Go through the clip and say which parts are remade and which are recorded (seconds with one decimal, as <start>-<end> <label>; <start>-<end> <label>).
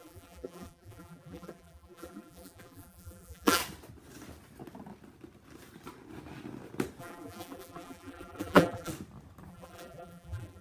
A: 0.0-3.6 remade; 3.6-7.0 recorded; 7.0-8.9 remade; 8.9-9.5 recorded; 9.5-10.6 remade